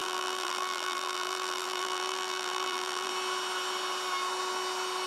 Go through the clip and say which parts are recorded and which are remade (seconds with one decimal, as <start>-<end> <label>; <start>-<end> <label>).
0.0-3.1 remade; 3.1-5.1 recorded